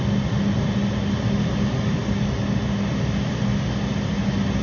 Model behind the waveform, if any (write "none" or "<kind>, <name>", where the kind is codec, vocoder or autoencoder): none